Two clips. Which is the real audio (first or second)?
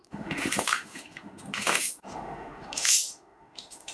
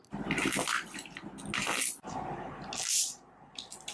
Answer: second